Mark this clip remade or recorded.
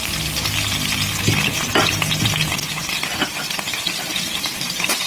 recorded